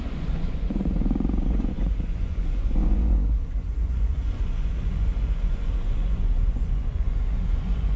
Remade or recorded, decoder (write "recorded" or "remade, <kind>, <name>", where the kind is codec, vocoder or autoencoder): remade, vocoder, Vocos